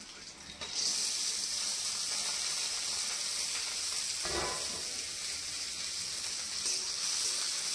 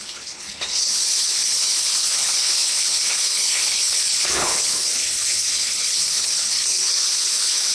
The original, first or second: first